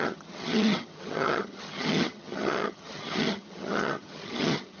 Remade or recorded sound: remade